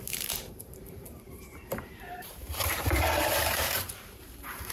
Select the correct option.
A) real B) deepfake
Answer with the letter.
B